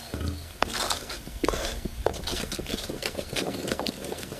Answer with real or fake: fake